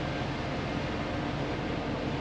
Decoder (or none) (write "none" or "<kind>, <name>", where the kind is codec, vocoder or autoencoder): none